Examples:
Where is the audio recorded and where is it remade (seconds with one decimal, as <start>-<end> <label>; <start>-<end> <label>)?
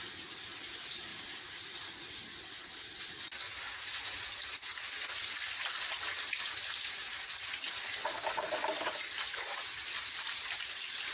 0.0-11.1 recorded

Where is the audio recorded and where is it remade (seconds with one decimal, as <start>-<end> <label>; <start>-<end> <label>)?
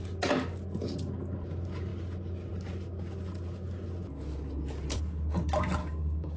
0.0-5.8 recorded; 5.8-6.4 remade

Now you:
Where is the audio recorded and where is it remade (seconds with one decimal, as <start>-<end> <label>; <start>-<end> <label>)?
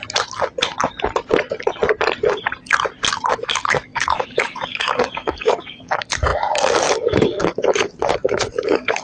0.0-3.1 recorded; 3.1-9.0 remade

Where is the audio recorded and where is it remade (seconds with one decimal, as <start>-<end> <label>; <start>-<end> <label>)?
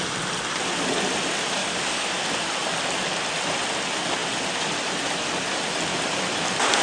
0.0-1.6 recorded; 1.6-2.2 remade; 2.2-6.8 recorded